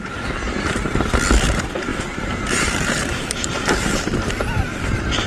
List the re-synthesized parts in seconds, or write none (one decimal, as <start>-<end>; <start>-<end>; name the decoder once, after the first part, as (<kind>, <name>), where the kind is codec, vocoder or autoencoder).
1.9-4.0 (vocoder, BigVGAN v2)